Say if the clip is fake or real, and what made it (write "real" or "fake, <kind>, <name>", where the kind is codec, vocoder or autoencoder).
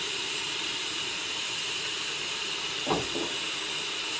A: real